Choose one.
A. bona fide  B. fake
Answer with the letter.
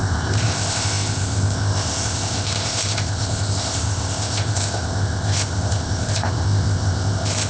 B